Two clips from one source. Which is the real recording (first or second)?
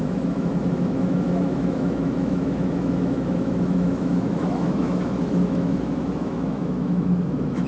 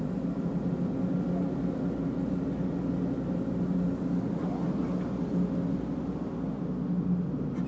second